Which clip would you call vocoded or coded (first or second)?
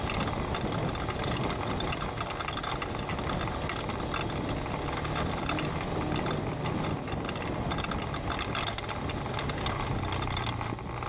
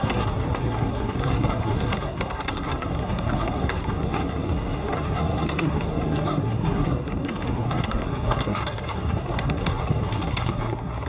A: second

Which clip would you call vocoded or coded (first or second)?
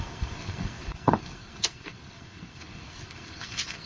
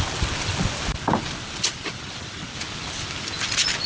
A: first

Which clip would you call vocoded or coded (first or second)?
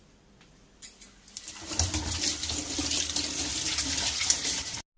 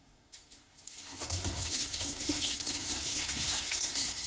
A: second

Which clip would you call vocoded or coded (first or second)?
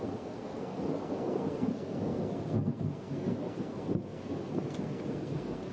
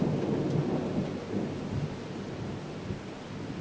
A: first